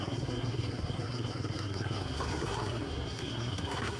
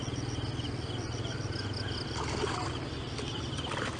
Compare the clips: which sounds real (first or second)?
second